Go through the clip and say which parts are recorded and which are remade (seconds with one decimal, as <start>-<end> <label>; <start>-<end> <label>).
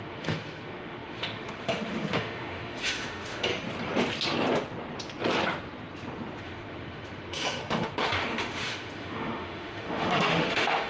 0.0-3.5 remade; 3.5-6.4 recorded; 6.4-10.9 remade